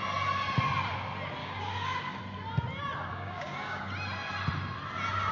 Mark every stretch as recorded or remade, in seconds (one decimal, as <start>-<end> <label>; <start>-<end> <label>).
0.0-1.4 recorded; 1.4-2.2 remade; 2.2-3.1 recorded; 3.1-3.8 remade; 3.8-5.3 recorded